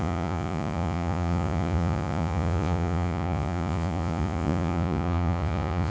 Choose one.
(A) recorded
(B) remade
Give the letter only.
B